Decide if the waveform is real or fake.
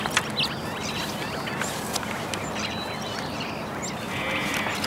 real